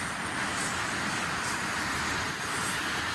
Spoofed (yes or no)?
no